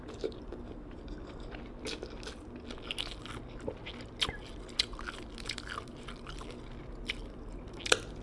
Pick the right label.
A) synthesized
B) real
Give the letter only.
B